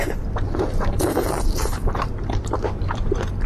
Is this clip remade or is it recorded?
remade